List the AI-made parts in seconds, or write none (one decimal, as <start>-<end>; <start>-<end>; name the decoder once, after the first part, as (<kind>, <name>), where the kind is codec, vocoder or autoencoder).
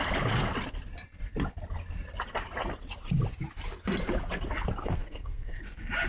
4.8-5.6 (codec, SNAC)